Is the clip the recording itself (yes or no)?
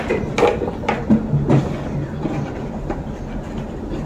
yes